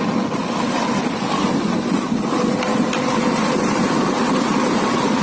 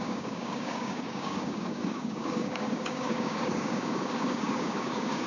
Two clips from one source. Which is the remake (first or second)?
second